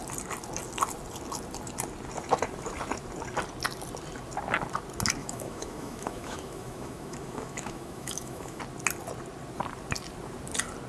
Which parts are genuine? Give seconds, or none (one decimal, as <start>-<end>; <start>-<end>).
0.0-5.2; 8.6-10.9